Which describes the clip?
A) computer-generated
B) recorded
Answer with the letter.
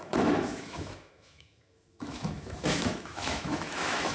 A